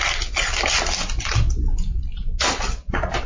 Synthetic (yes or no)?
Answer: no